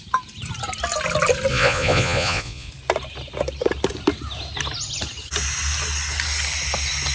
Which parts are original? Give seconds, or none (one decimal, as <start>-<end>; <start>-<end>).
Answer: 0.0-1.5; 2.7-7.1